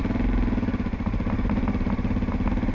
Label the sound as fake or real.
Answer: real